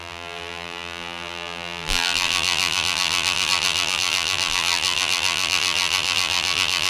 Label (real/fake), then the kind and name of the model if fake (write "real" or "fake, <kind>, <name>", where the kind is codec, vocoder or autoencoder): fake, vocoder, BigVGAN v2